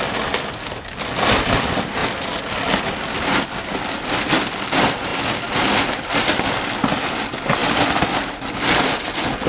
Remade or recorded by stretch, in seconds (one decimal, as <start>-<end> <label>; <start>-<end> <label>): 0.0-9.5 recorded